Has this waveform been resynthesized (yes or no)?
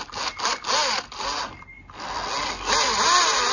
no